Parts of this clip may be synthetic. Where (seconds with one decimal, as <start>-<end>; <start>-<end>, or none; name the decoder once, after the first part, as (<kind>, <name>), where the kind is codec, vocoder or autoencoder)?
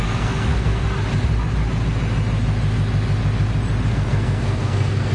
0.0-0.8 (codec, SNAC); 3.9-5.1